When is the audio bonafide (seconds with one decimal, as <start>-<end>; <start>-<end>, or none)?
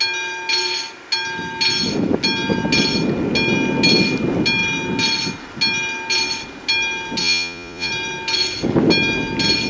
0.0-7.2; 7.9-9.7